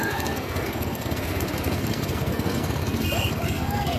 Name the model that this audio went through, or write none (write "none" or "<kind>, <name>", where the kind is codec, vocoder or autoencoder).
codec, SNAC